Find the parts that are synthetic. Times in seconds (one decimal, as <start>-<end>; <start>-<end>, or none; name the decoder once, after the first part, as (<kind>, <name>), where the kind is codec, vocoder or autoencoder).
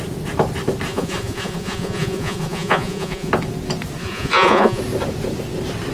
0.9-3.3 (vocoder, Vocos); 4.0-4.8